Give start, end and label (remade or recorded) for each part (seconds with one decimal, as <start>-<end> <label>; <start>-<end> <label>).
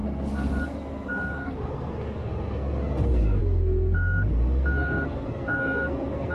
0.0-6.3 remade